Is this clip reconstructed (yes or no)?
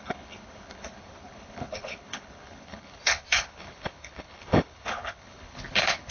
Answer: yes